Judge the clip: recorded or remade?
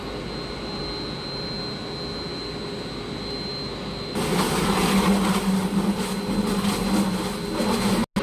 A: recorded